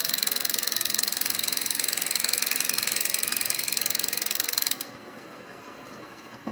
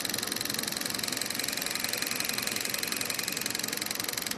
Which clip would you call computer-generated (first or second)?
first